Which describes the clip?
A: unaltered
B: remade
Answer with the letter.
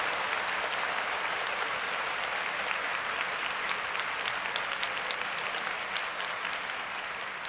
A